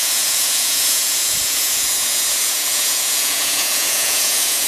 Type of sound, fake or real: fake